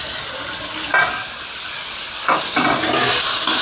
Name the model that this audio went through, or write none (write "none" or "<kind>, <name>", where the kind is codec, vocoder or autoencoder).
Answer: none